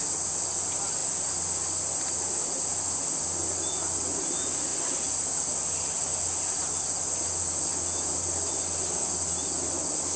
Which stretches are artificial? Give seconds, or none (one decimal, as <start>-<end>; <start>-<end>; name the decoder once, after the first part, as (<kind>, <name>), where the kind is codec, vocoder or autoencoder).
none